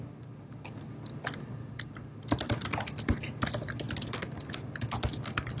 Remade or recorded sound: recorded